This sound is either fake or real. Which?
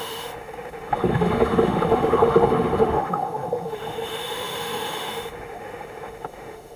fake